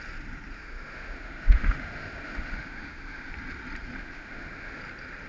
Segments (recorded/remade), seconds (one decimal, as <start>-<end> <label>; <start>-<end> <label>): 0.0-0.6 recorded; 0.6-3.3 remade; 3.3-3.9 recorded; 3.9-4.8 remade; 4.8-5.3 recorded